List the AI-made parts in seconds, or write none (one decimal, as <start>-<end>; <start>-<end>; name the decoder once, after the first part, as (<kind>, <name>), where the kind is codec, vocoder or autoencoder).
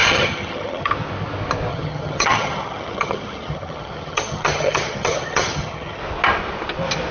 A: 0.0-0.9 (vocoder, HiFi-GAN); 1.7-6.0